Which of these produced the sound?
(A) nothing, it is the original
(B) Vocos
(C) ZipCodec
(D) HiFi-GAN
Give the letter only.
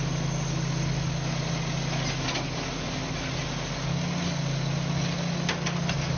A